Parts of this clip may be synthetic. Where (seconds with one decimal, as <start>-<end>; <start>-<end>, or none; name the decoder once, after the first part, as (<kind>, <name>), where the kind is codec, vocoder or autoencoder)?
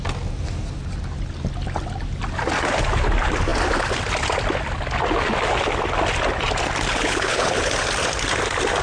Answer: 6.9-7.7 (codec, HILCodec)